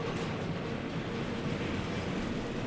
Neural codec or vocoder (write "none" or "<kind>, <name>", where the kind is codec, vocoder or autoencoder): none